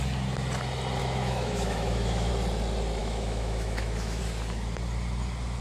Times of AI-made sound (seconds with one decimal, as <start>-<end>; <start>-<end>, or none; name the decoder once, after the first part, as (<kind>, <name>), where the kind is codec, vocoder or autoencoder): 1.0-2.3 (autoencoder, DAC-VAE); 3.0-4.2